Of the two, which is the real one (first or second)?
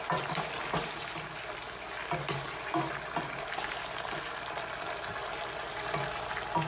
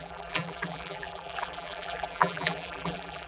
first